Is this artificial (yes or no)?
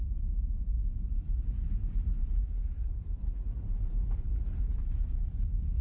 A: yes